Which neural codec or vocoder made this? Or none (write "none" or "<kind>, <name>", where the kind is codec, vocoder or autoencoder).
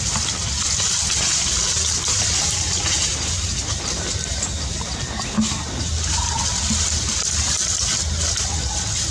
none